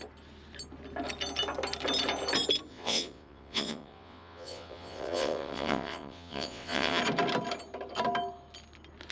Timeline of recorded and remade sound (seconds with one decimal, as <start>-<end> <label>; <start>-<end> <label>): 0.0-2.7 recorded; 2.7-7.0 remade; 7.0-9.1 recorded